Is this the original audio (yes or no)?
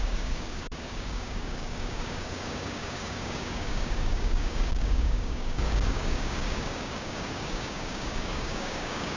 no